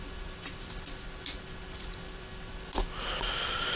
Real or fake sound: real